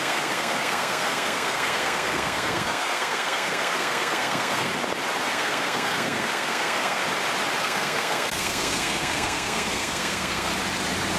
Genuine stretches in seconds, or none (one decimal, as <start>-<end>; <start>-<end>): 4.7-5.3; 7.0-7.6; 10.5-11.2